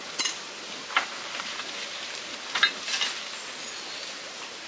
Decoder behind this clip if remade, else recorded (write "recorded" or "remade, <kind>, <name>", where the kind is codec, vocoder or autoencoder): recorded